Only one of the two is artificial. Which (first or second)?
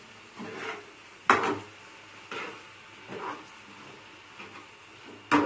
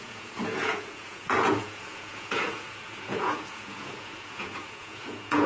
second